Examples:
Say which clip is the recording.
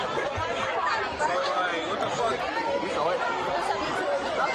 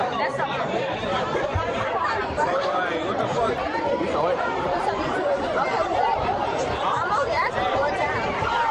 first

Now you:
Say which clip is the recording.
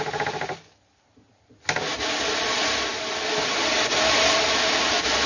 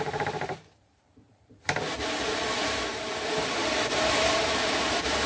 first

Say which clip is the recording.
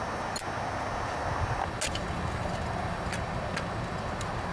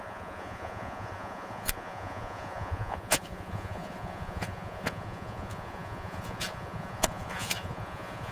first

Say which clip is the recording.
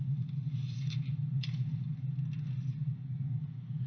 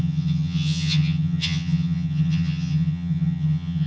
first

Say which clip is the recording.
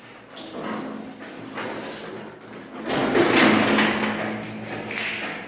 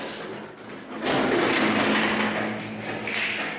first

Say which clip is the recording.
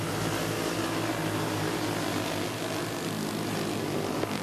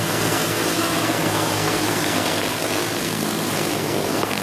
first